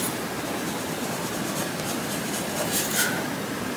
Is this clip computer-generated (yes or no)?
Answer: no